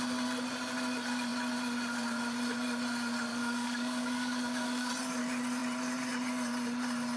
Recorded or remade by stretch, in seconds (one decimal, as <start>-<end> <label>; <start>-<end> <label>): 0.0-3.3 recorded; 3.3-4.9 remade; 4.9-7.2 recorded